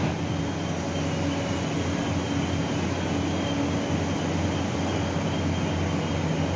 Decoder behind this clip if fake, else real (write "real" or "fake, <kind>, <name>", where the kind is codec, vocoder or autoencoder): real